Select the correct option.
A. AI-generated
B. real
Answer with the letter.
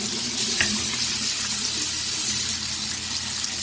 B